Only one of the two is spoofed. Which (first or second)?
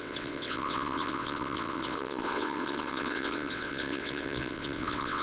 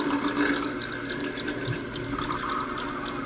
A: first